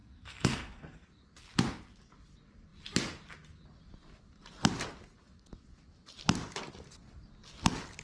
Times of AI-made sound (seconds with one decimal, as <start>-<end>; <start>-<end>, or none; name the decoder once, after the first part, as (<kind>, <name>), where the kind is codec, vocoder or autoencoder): 0.0-1.2 (codec, SNAC)